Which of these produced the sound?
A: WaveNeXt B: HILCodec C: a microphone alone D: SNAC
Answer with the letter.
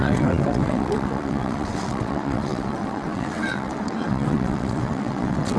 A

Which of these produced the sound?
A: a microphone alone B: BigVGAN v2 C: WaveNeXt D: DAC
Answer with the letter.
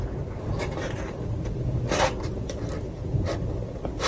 A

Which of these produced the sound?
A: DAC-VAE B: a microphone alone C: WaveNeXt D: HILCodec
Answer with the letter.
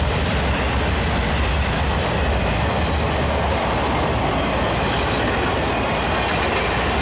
B